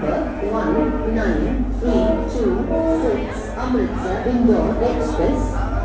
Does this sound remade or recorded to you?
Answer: recorded